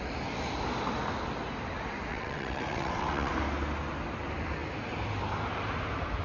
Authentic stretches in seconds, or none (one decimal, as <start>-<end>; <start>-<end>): 0.0-2.1; 3.3-6.2